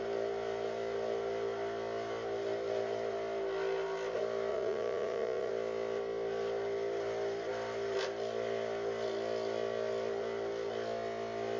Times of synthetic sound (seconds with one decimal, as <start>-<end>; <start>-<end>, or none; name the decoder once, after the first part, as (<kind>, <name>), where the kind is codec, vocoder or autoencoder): 4.5-5.5 (vocoder, Vocos)